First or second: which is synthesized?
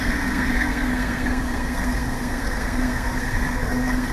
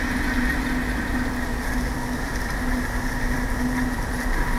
first